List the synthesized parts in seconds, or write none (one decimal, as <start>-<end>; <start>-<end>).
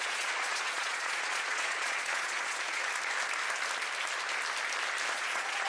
0.0-2.8; 5.1-5.7